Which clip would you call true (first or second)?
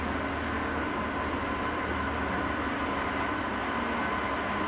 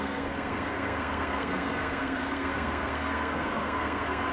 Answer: first